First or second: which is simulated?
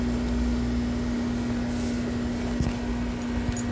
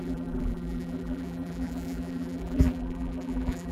second